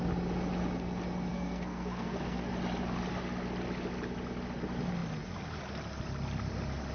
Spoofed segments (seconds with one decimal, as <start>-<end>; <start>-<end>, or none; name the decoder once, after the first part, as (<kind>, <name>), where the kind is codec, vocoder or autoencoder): 1.3-2.5 (codec, SNAC)